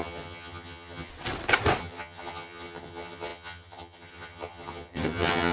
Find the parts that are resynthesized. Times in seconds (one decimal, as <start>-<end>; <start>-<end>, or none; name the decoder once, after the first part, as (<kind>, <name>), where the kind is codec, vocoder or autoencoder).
0.0-1.1 (vocoder, HiFi-GAN); 1.8-5.5